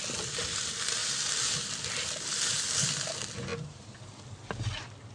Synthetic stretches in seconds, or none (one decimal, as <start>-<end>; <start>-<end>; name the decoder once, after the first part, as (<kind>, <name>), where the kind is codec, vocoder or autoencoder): none